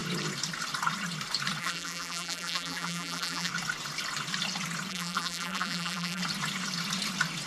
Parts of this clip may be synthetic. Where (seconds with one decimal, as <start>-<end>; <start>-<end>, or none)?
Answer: 1.6-3.5; 4.9-6.2